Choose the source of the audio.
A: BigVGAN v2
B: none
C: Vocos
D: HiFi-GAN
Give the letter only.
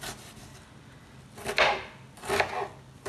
B